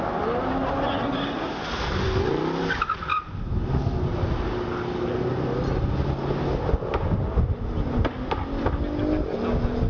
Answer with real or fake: real